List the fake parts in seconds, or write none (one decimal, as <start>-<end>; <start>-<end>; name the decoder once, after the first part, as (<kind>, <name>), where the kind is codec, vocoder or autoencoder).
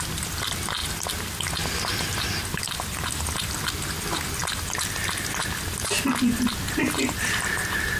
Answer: none